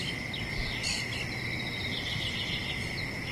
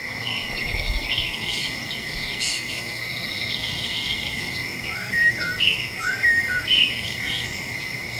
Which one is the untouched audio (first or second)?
first